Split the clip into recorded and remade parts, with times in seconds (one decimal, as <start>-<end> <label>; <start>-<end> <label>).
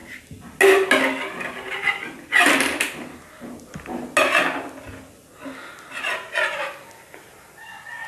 0.0-8.1 recorded